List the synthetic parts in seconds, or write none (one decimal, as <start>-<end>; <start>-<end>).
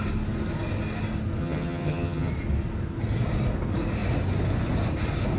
1.4-2.3